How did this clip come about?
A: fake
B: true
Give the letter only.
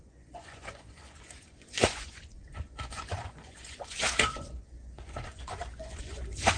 A